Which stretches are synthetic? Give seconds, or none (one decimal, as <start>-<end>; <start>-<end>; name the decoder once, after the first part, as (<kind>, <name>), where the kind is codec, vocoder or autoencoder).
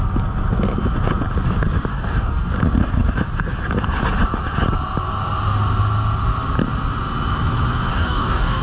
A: 1.9-2.5 (codec, DAC); 7.9-8.6